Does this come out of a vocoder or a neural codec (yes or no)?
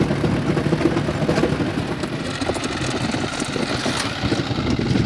no